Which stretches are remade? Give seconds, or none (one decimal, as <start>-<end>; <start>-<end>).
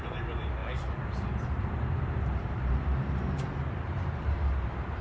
0.0-0.6; 1.6-5.0